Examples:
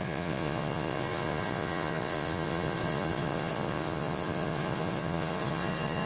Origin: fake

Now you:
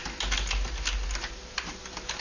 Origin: real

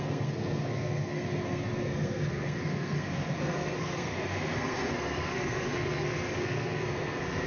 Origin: fake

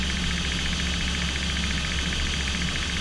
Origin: real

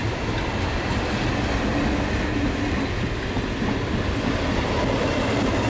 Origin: real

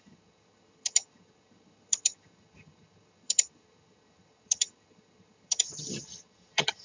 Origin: fake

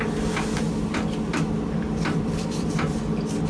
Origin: real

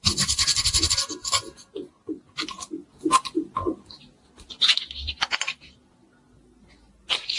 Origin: real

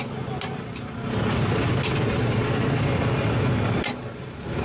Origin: real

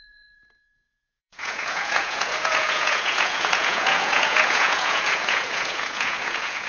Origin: fake